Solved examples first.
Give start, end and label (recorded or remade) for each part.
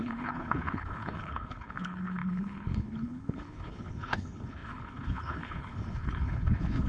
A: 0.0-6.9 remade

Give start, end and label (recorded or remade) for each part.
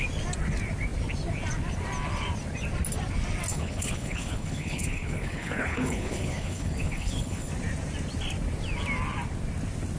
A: 0.0-3.5 recorded; 3.5-7.5 remade; 7.5-10.0 recorded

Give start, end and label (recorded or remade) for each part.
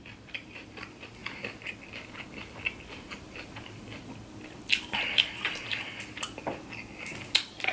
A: 0.0-7.7 recorded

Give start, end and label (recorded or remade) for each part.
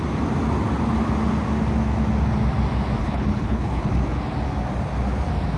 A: 0.0-3.0 recorded; 3.0-3.9 remade; 3.9-5.6 recorded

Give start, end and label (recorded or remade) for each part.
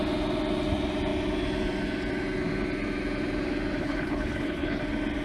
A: 0.0-3.8 recorded; 3.8-4.8 remade; 4.8-5.2 recorded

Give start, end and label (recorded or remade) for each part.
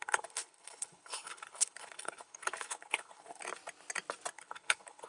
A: 0.0-3.4 remade; 3.4-4.3 recorded; 4.3-5.1 remade